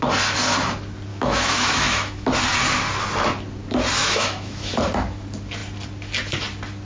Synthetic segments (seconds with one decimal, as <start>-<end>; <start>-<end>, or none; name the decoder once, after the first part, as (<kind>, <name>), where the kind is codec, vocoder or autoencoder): 1.1-2.3 (autoencoder, DAC-VAE); 4.0-4.7